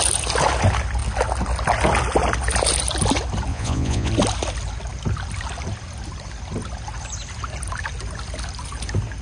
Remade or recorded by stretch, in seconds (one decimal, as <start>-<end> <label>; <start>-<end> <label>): 0.0-3.5 recorded; 3.5-4.1 remade; 4.1-9.2 recorded